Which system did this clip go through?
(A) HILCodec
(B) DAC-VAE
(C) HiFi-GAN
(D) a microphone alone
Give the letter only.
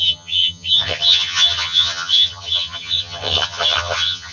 C